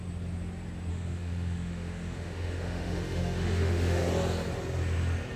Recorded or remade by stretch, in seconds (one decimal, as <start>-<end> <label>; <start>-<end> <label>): 0.0-0.9 recorded; 0.9-4.1 remade; 4.1-5.4 recorded